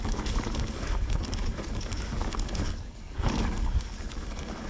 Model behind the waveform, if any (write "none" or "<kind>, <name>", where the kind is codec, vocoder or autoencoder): codec, DAC